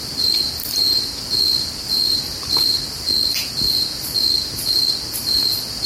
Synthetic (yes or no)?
no